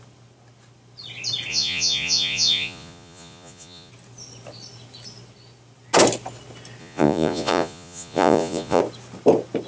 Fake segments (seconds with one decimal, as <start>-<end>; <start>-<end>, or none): 1.5-3.9; 6.8-8.8